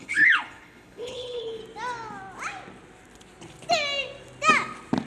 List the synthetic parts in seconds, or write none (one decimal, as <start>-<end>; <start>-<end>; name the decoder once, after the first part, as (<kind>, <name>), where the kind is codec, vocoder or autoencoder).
0.0-1.6 (codec, HILCodec)